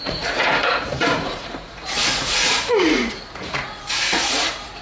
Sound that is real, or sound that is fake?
fake